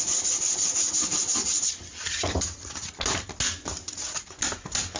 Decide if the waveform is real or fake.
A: real